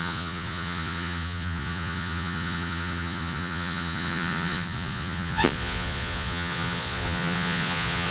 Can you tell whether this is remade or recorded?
remade